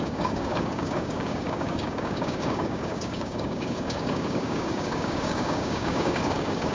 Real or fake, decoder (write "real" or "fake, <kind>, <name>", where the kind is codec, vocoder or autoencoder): fake, codec, DAC